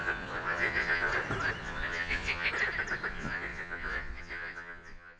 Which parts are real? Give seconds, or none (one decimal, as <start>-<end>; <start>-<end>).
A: 1.1-1.6; 2.5-3.1